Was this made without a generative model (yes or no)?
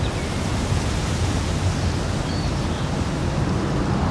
yes